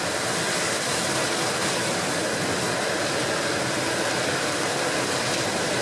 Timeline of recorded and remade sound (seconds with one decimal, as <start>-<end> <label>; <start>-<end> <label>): 0.0-5.8 recorded